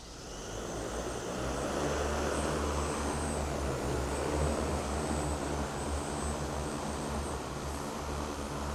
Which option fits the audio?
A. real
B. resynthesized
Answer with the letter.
A